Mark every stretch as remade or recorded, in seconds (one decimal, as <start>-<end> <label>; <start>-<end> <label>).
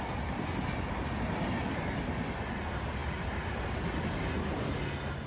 0.0-5.3 recorded